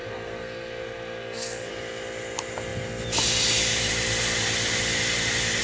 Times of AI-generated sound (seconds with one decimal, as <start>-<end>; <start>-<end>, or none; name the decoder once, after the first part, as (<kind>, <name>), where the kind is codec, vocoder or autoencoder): 0.0-1.7 (codec, SNAC)